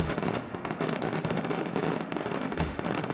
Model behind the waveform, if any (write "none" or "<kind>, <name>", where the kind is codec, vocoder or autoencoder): autoencoder, DAC-VAE